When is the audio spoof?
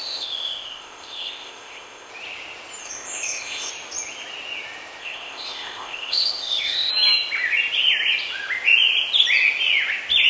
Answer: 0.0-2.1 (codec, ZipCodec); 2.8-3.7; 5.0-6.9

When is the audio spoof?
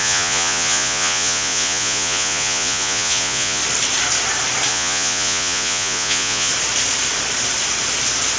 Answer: 0.0-3.6 (vocoder, Vocos); 4.7-6.5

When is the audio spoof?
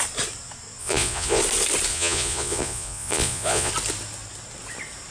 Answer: 0.8-1.4 (vocoder, Vocos); 1.9-3.7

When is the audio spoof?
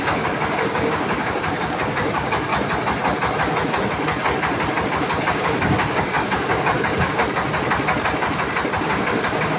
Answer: 0.0-2.5 (codec, DAC); 4.9-7.2; 8.8-9.6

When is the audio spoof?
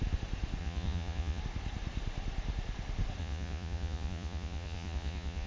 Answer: 0.6-1.4 (vocoder, Vocos); 3.2-5.5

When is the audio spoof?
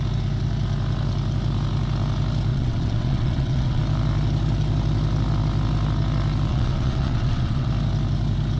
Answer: 2.5-3.8 (vocoder, WaveNeXt); 6.5-7.7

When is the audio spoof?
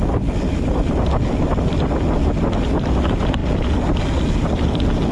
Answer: none